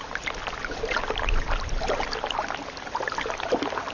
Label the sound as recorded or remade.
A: recorded